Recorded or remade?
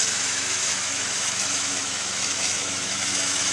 remade